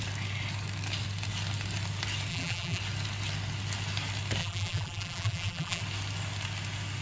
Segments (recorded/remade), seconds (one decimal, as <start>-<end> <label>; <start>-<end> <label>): 0.0-2.3 recorded; 2.3-2.8 remade; 2.8-4.4 recorded; 4.4-5.8 remade; 5.8-7.0 recorded